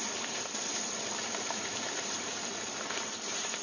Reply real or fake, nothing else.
fake